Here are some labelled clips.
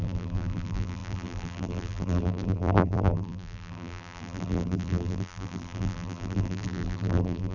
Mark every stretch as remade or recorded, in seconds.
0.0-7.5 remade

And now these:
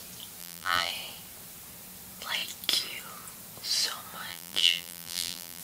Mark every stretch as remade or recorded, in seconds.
0.0-0.4 recorded; 0.4-0.9 remade; 0.9-4.3 recorded; 4.3-5.6 remade

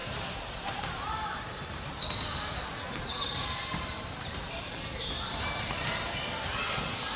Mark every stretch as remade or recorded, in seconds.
0.0-1.9 remade; 1.9-3.1 recorded; 3.1-6.2 remade; 6.2-7.2 recorded

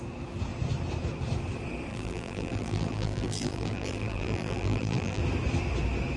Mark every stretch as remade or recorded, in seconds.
0.0-1.9 recorded; 1.9-5.2 remade; 5.2-6.2 recorded